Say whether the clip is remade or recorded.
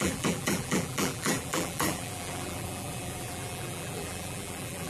remade